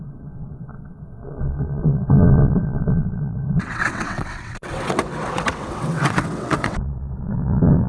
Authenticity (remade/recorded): remade